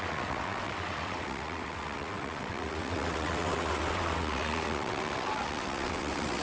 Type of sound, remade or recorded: remade